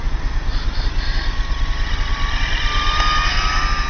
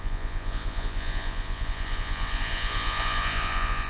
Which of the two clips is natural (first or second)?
first